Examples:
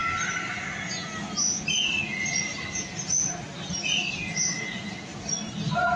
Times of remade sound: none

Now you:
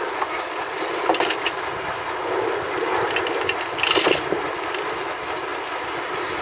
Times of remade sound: none

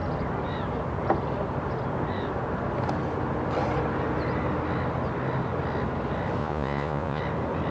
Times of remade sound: 6.4-7.2 (vocoder, Vocos)